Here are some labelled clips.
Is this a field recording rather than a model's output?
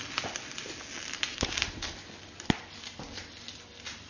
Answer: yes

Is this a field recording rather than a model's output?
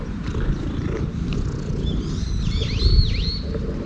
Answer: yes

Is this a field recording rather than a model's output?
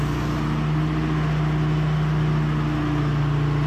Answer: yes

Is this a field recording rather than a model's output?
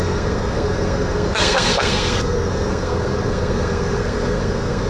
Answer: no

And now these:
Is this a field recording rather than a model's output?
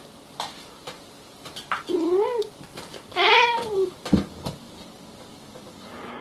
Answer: yes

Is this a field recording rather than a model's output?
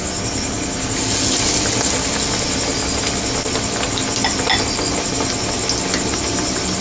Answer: yes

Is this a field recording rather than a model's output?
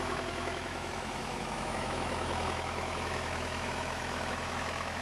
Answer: no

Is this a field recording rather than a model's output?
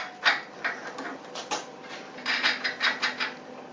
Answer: yes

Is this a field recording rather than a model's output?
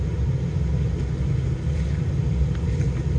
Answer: yes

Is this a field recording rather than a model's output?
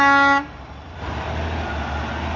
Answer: yes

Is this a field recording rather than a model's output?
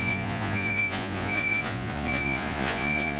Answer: no